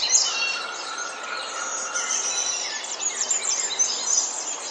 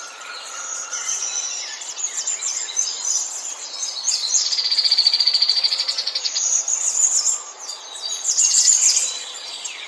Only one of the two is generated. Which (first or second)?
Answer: second